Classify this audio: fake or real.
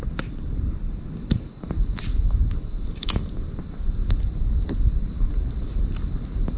fake